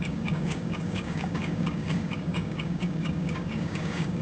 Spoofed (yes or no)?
yes